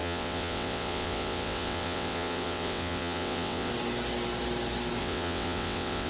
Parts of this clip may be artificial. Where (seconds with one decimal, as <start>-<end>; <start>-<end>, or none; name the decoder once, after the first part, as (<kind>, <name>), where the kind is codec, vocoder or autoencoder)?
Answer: 0.0-3.7 (vocoder, WaveNeXt); 5.0-6.1